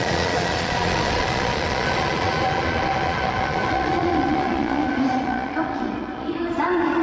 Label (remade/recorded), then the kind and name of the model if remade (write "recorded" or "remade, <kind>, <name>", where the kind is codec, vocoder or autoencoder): remade, vocoder, Vocos